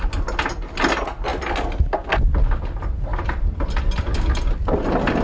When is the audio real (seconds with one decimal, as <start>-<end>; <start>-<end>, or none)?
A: 0.0-5.2